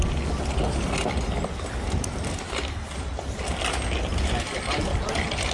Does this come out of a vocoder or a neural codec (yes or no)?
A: no